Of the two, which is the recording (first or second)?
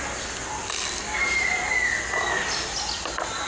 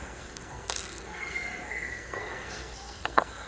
first